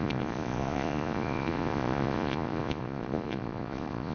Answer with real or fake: fake